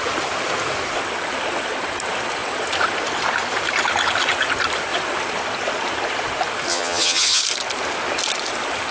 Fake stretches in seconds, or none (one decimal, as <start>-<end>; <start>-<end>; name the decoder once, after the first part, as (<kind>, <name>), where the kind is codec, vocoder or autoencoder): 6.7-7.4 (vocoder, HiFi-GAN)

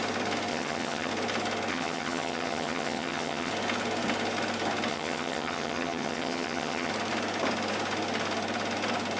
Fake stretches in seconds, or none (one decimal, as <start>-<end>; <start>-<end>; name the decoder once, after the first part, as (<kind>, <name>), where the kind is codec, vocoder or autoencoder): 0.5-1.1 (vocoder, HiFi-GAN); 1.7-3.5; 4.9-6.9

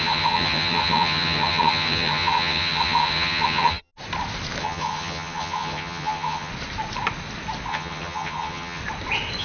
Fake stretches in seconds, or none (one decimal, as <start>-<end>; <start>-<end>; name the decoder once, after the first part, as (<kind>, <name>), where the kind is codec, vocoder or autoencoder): 0.0-3.9 (vocoder, HiFi-GAN); 4.6-6.5; 7.7-8.8

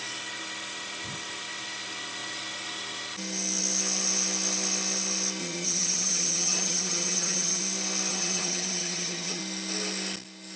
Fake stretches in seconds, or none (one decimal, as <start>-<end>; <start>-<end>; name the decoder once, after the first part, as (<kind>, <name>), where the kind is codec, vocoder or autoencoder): 5.4-7.6 (vocoder, HiFi-GAN); 8.1-9.4

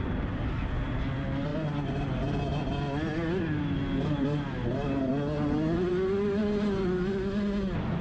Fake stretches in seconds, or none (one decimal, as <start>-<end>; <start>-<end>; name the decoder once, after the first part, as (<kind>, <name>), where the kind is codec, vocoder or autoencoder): none